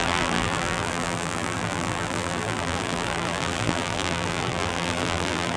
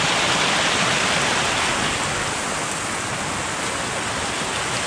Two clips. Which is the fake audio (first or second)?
first